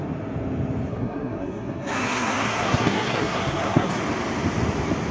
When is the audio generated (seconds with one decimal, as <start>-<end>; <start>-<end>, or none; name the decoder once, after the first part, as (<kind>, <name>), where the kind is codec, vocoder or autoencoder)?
0.9-4.0 (codec, SNAC)